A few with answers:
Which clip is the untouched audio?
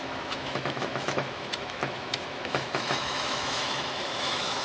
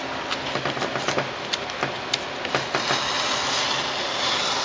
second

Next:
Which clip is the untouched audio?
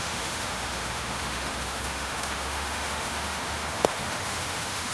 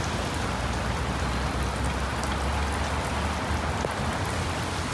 second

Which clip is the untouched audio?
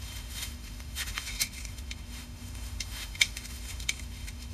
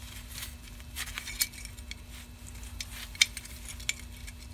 second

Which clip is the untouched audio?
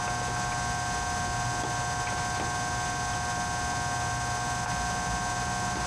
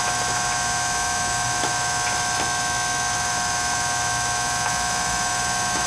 first